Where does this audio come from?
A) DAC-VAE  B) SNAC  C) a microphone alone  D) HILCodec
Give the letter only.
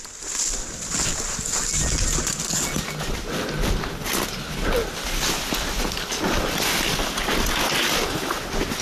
C